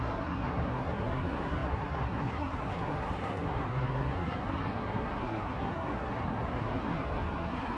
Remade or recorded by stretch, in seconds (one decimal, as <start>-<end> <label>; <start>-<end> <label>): 0.0-7.8 remade